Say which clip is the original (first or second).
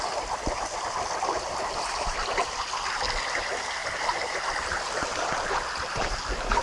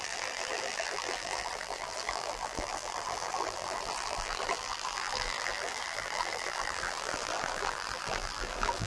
first